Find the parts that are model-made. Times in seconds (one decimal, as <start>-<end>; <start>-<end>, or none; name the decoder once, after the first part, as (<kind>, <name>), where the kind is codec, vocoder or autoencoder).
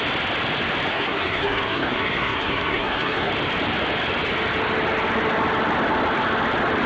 0.9-3.3 (codec, SNAC)